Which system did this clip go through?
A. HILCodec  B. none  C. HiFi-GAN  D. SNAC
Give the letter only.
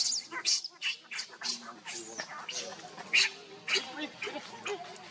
B